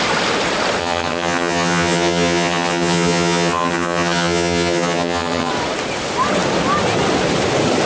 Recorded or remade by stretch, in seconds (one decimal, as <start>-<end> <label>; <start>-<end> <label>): 0.0-0.8 recorded; 0.8-5.5 remade; 5.5-7.9 recorded